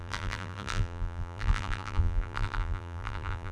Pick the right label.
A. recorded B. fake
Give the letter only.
B